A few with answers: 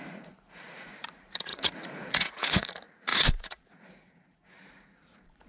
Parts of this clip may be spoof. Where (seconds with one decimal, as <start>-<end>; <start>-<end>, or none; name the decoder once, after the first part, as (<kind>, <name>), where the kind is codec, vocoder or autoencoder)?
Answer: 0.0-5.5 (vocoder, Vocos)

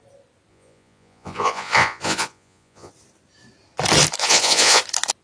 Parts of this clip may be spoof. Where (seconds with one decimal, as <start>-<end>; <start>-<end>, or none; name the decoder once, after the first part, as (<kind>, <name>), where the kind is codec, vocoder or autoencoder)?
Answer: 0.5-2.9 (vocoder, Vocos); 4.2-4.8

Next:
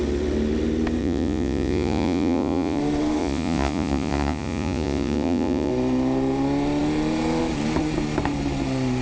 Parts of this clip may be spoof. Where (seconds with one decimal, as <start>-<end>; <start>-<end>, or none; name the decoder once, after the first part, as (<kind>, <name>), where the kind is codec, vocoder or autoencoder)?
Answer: 1.0-2.8 (vocoder, Vocos); 3.2-5.7

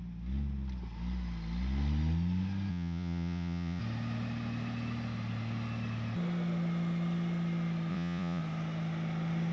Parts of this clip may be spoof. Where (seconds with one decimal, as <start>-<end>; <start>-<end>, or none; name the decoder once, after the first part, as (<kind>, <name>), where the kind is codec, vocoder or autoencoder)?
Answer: 2.7-3.8 (vocoder, Vocos); 7.9-8.4

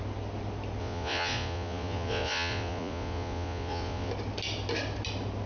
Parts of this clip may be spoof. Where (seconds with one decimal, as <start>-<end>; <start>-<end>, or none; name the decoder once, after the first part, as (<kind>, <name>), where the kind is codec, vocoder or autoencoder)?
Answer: 0.8-4.1 (vocoder, Vocos)